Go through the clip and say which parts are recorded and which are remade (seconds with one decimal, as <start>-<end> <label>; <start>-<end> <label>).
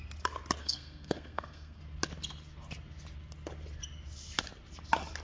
0.0-0.6 recorded; 0.6-1.8 remade; 1.8-5.2 recorded